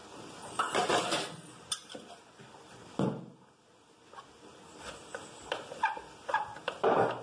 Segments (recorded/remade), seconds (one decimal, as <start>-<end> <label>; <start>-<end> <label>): 0.0-7.2 recorded